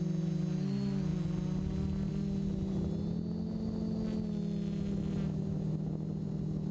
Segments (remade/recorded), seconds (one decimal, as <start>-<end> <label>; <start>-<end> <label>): 0.0-6.7 recorded